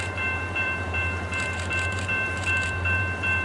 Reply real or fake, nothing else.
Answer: fake